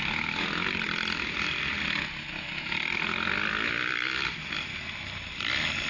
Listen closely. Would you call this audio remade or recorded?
recorded